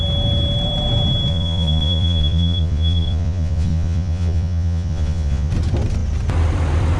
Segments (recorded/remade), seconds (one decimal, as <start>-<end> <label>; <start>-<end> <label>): 0.0-1.3 recorded; 1.3-5.5 remade; 5.5-7.0 recorded